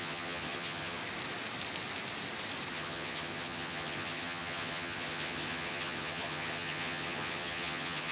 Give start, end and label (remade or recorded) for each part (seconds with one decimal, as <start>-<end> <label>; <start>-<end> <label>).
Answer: 0.0-1.0 remade; 1.0-2.7 recorded; 2.7-8.1 remade